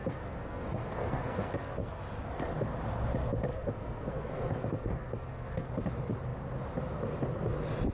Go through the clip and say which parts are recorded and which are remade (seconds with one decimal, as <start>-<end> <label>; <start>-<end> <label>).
0.0-2.0 remade; 2.0-3.5 recorded; 3.5-5.7 remade; 5.7-7.9 recorded